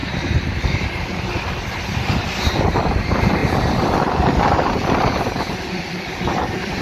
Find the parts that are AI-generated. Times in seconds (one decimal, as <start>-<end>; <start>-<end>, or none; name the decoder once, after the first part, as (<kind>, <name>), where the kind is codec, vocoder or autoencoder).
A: 0.0-6.8 (vocoder, BigVGAN v2)